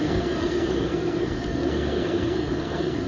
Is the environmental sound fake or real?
fake